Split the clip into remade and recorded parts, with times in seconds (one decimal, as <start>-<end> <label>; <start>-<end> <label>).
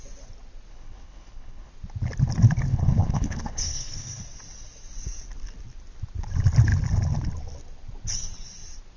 0.0-0.7 recorded; 0.7-1.7 remade; 1.7-2.7 recorded; 2.7-4.2 remade; 4.2-9.0 recorded